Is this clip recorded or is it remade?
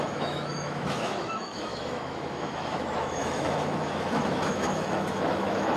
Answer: remade